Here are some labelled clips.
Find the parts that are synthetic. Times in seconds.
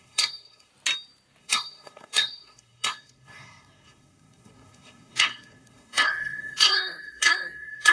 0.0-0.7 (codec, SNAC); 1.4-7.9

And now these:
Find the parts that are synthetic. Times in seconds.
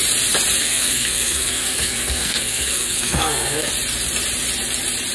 0.6-3.7 (codec, SNAC)